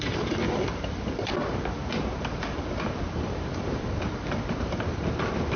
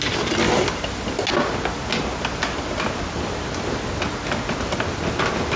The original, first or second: second